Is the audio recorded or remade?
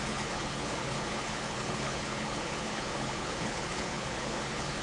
remade